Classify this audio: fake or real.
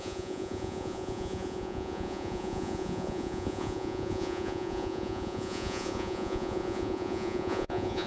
fake